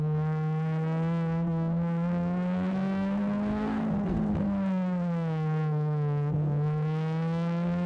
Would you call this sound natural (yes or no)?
no